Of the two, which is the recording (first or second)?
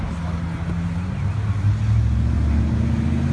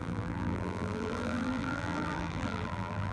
first